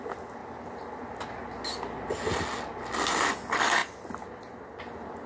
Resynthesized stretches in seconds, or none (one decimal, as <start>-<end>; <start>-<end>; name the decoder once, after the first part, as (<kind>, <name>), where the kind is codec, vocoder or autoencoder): none